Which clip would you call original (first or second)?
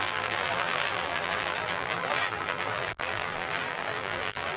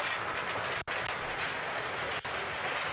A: second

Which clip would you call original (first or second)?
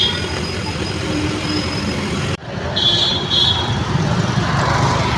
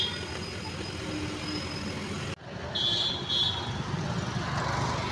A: second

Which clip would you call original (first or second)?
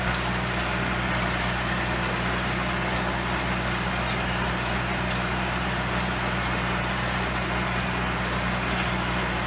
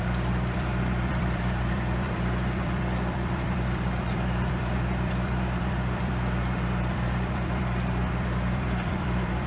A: first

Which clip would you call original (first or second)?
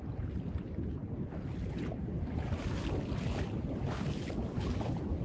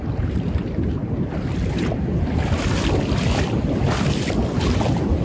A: first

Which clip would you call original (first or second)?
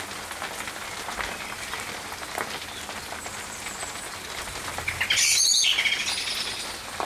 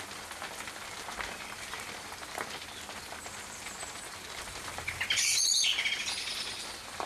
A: first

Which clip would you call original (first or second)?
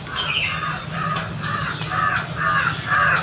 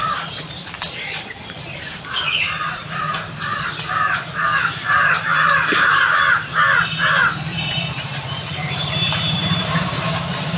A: first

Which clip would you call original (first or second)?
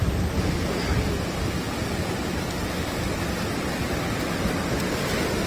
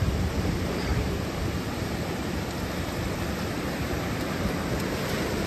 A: first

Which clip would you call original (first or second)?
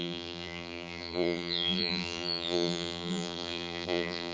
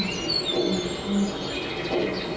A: second